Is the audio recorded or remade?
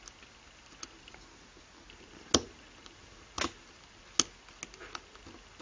recorded